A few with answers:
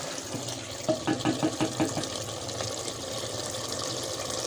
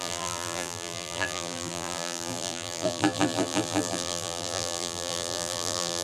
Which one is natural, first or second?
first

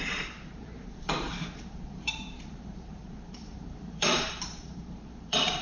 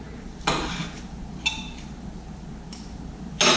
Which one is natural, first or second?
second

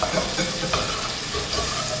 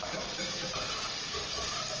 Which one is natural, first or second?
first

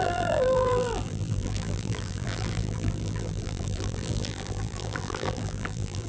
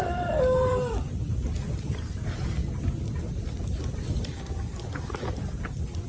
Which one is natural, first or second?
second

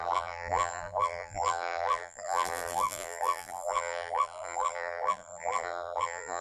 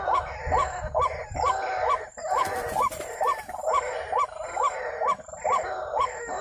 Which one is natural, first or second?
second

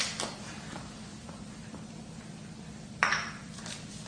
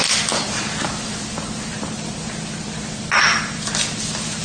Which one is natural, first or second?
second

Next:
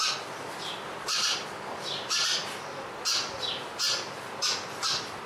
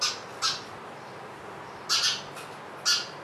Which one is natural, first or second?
second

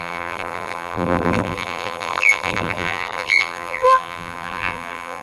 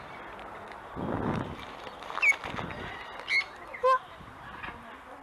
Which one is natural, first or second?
second